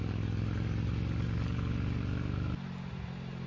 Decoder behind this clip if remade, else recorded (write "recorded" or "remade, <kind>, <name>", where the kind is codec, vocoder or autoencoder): recorded